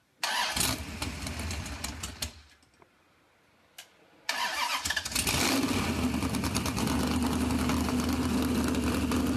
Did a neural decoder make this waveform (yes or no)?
no